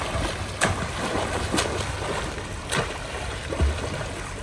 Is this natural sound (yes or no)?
yes